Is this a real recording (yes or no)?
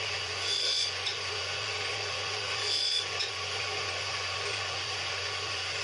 no